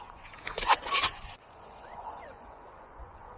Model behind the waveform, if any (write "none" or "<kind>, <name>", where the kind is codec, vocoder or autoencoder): vocoder, Vocos